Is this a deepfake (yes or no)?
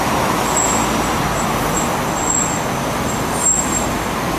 no